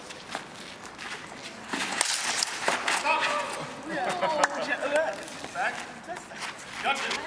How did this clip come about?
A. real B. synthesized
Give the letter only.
A